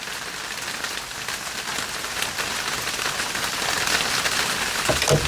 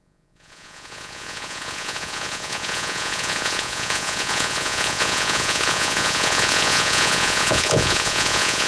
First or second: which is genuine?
first